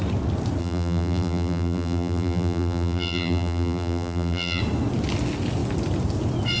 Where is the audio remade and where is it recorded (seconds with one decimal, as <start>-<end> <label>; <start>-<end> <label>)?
0.0-0.6 recorded; 0.6-4.6 remade; 4.6-6.6 recorded